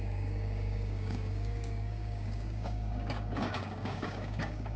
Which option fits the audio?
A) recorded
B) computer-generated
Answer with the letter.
B